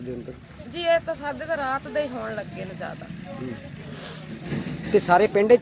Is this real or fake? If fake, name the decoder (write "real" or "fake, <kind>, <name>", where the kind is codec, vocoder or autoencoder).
real